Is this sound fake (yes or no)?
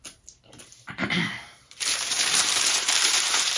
yes